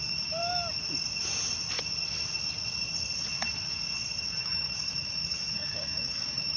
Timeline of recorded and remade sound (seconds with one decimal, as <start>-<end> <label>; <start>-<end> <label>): 0.0-0.4 remade; 0.4-4.4 recorded; 4.4-6.6 remade